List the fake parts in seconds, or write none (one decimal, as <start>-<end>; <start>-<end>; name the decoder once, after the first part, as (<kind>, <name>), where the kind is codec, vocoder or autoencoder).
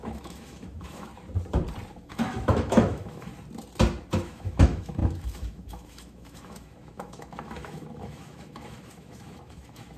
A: 0.0-1.1 (autoencoder, DAC-VAE); 1.9-3.3; 4.1-10.0